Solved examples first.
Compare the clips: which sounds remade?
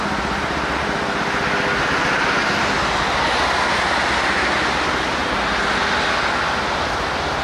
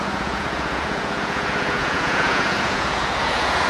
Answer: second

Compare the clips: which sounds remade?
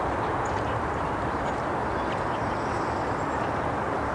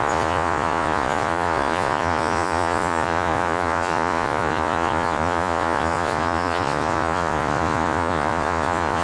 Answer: second